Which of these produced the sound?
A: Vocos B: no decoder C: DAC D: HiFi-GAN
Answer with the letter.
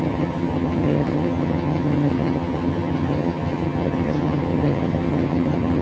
D